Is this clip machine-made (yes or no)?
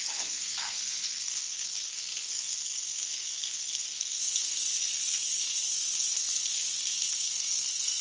yes